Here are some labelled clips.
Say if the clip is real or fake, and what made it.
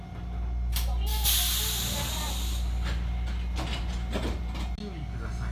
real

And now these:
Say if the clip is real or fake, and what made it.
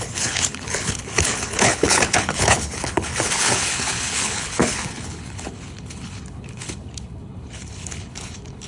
fake, codec, HILCodec